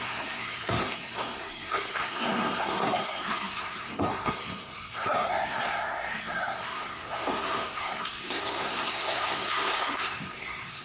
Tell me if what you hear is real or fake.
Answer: fake